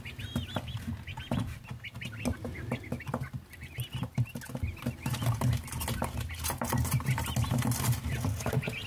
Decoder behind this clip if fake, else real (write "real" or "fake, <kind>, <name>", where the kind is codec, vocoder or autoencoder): real